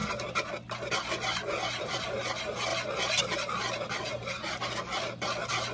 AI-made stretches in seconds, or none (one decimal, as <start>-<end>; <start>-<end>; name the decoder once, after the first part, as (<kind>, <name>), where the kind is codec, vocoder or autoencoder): 2.7-3.2 (vocoder, BigVGAN v2)